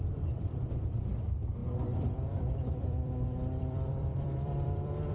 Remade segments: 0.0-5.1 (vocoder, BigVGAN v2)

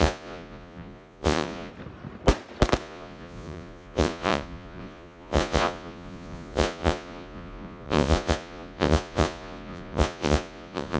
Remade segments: 0.0-1.7 (vocoder, Vocos); 2.8-11.0

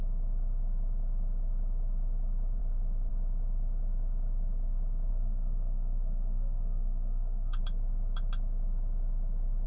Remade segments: 5.1-7.6 (codec, SNAC)

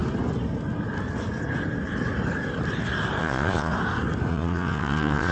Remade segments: 3.2-3.7 (vocoder, Vocos); 4.3-5.3

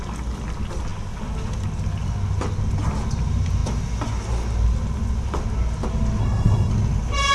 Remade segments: 6.2-6.7 (codec, SNAC)

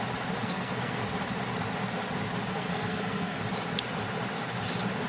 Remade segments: 0.4-1.0 (codec, SNAC); 2.5-3.4

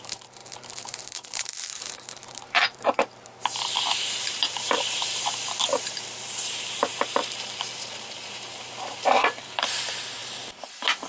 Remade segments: 0.0-10.2 (vocoder, BigVGAN v2)

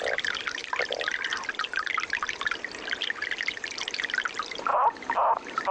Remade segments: 0.6-3.0 (vocoder, BigVGAN v2); 4.7-5.7